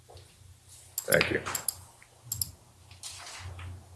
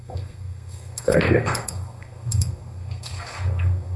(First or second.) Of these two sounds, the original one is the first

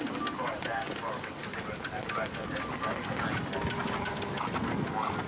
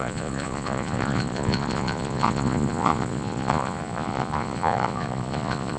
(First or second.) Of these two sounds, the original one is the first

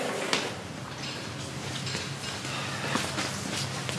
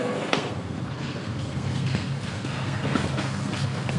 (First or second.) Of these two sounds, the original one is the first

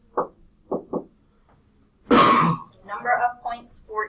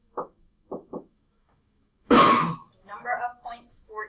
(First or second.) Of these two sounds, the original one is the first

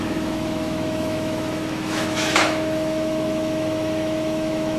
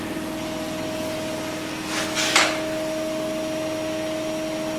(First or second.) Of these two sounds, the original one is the second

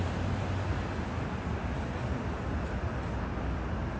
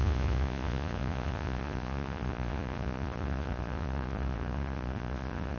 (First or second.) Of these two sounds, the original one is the first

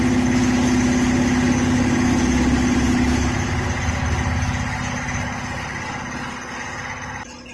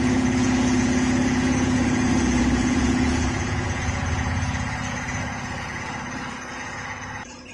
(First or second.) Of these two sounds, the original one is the first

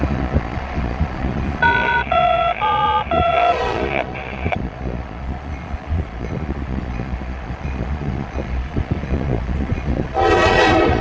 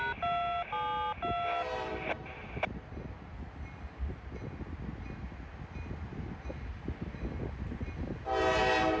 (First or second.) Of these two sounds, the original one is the second